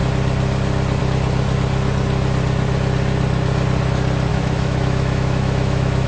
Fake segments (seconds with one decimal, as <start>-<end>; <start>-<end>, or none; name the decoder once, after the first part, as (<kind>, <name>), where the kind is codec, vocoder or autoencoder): 4.3-6.1 (autoencoder, DAC-VAE)